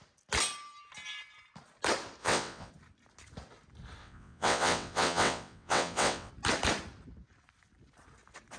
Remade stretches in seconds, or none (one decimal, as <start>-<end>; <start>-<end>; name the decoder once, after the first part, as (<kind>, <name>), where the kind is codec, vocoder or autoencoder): 2.2-2.7 (vocoder, WaveNeXt); 4.0-6.3